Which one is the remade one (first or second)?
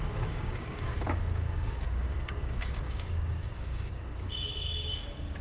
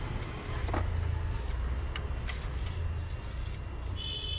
first